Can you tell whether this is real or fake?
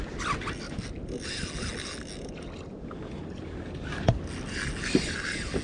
real